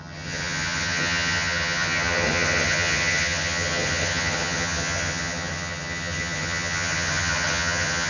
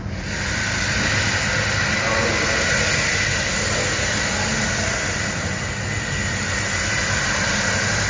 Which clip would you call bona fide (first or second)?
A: second